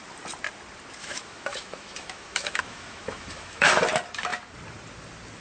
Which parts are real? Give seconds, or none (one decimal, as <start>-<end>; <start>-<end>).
0.0-1.0; 3.7-5.4